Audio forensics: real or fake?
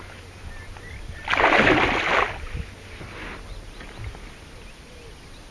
real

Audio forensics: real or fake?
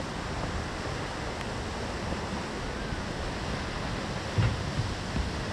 real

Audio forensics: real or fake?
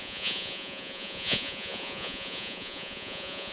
fake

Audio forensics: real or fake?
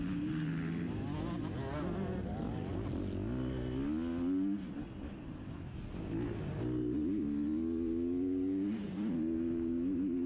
real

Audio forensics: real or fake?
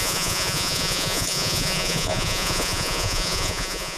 fake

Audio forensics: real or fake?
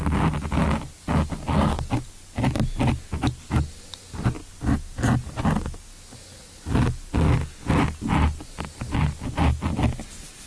real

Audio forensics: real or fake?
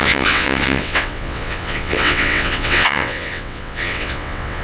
fake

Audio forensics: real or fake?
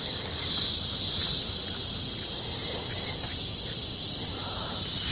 real